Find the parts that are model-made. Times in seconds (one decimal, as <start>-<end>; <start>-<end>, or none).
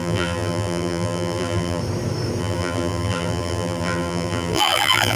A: 0.0-1.8; 2.4-5.2